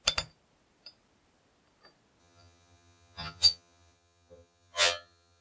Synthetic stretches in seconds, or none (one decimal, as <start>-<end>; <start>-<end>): 2.2-5.4